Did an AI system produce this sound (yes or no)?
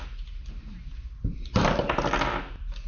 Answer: no